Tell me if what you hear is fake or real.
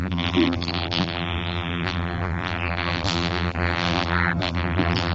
fake